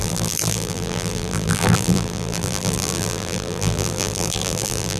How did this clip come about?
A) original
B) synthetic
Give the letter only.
B